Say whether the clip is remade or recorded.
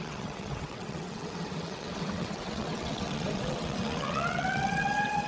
remade